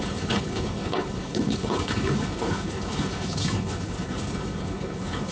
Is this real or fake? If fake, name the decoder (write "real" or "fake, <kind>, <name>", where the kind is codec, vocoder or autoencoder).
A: fake, codec, HILCodec